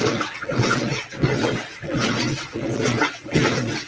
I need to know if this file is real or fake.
fake